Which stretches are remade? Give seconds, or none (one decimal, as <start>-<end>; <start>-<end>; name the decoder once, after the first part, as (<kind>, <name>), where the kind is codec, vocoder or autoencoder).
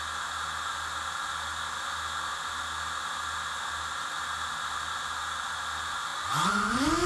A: none